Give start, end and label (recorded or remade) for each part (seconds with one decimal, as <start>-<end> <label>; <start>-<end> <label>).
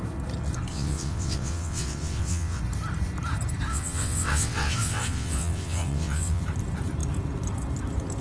0.0-0.7 recorded; 0.7-2.6 remade; 2.6-3.7 recorded; 3.7-6.4 remade; 6.4-8.2 recorded